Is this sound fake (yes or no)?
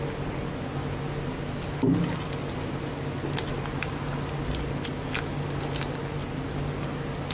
no